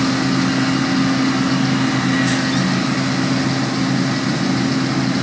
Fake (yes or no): no